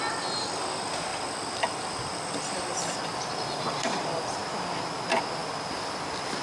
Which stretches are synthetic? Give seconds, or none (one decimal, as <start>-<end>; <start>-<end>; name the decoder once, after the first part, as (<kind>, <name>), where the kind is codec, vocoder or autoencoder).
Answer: 1.1-4.9 (vocoder, BigVGAN v2); 5.4-6.0